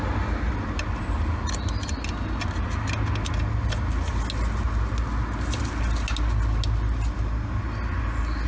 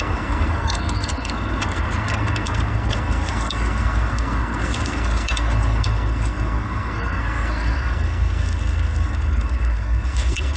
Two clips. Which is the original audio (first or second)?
first